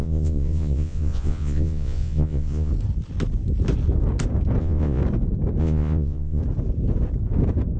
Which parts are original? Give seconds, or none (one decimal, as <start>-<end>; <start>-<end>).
2.7-4.6; 5.0-5.6; 6.4-7.8